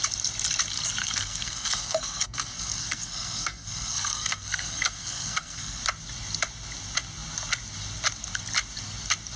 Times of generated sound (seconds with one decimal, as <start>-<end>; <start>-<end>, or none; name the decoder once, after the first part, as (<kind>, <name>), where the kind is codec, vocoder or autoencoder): 1.0-5.8 (codec, SNAC)